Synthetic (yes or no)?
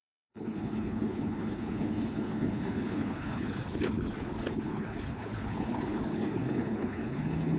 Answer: yes